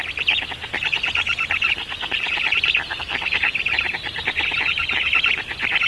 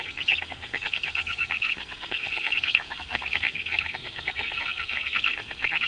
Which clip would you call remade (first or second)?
second